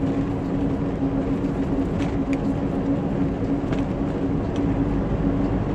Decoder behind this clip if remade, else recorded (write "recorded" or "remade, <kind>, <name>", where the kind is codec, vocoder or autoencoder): recorded